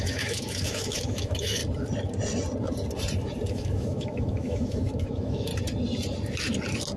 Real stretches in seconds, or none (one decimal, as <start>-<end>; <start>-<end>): 1.6-3.5; 5.5-7.0